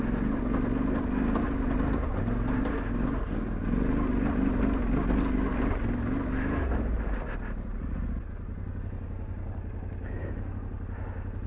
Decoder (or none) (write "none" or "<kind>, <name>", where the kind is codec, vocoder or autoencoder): none